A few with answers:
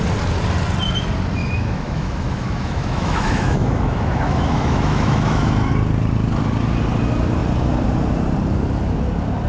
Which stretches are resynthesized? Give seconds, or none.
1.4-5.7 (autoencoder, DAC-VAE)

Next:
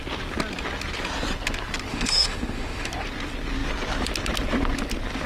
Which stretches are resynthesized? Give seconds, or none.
1.9-2.9 (autoencoder, DAC-VAE)